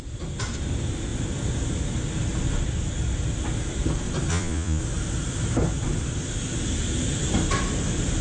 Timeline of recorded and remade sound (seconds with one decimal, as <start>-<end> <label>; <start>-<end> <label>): 0.0-4.3 recorded; 4.3-4.8 remade; 4.8-8.2 recorded